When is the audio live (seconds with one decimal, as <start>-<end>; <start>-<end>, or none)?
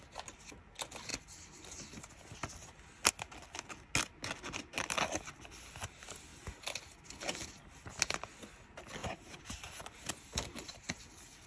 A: 0.0-9.0; 11.0-11.5